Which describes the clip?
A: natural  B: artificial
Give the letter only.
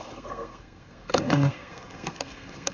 B